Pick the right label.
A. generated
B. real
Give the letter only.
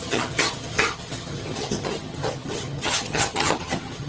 A